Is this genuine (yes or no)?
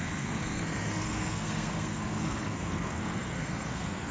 no